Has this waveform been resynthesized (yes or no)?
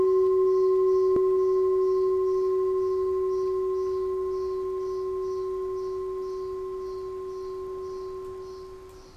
no